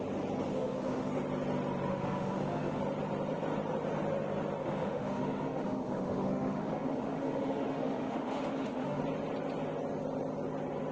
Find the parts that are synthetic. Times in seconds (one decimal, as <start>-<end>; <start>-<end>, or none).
0.5-1.1; 1.9-2.8; 4.6-9.0

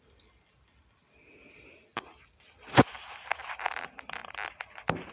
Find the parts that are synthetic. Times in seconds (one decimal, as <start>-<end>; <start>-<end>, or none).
none

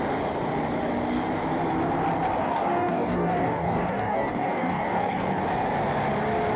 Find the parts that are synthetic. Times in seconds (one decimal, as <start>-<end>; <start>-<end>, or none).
2.4-5.4

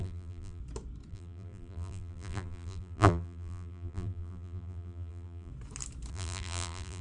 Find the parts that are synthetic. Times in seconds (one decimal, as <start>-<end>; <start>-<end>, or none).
0.0-0.6; 1.1-5.5; 6.1-7.0